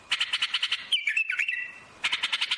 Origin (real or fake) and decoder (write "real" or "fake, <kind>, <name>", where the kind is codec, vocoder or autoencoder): real